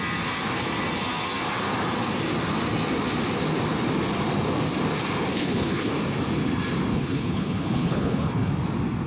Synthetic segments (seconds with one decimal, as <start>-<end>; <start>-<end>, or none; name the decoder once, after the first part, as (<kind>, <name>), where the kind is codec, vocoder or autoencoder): 5.3-5.9 (codec, HILCodec); 6.9-8.5